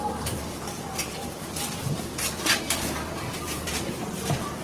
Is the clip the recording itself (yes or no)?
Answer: no